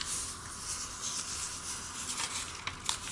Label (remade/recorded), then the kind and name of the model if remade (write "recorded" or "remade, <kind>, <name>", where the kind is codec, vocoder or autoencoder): recorded